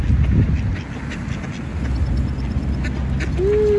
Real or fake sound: real